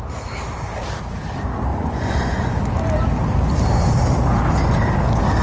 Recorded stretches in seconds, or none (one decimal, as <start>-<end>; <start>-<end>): 0.0-1.7; 2.5-5.4